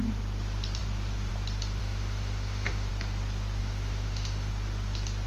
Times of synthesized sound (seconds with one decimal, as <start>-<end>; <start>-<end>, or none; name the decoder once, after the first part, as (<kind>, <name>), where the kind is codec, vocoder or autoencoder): 1.8-2.9 (autoencoder, DAC-VAE); 3.6-4.5